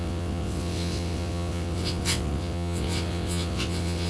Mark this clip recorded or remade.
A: remade